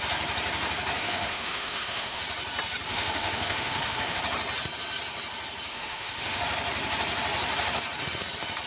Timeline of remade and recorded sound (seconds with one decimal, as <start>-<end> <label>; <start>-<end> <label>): 0.0-1.0 recorded; 1.0-2.2 remade; 2.2-2.9 recorded; 2.9-4.2 remade; 4.2-5.7 recorded; 5.7-6.4 remade; 6.4-8.7 recorded